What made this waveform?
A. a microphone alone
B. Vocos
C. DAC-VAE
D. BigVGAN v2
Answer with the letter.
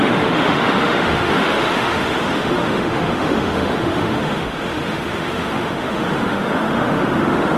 C